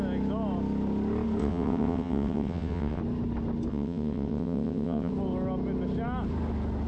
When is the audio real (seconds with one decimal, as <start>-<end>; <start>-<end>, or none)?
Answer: 0.0-1.4; 3.0-3.7; 5.1-6.9